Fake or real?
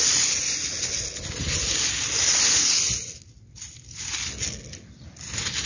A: real